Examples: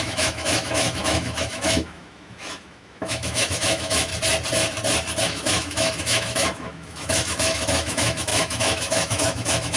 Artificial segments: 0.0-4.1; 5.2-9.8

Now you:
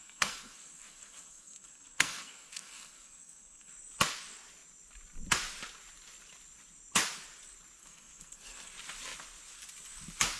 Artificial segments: 0.0-3.7; 7.8-8.7

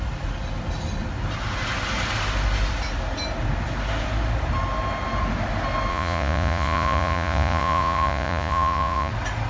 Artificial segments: 5.9-9.1

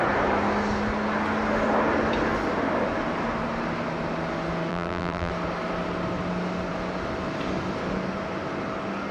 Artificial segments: 4.7-5.3

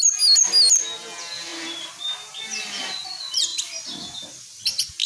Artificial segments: none

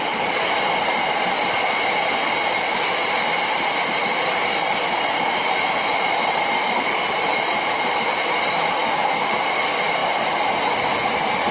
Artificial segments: 7.3-7.9

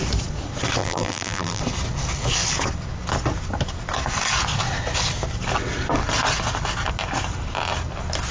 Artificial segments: 0.8-1.6

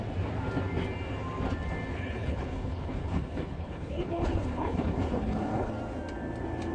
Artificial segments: 1.9-5.7